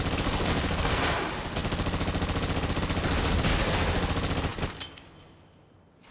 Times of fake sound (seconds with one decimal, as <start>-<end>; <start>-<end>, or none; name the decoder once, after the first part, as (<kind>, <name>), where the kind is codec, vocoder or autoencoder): 0.5-1.0 (codec, SNAC)